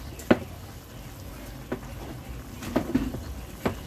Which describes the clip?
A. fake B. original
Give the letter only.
B